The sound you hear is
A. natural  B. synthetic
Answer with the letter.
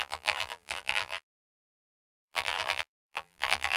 B